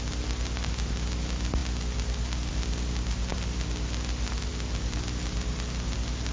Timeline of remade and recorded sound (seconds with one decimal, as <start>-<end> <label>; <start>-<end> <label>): 0.0-6.3 recorded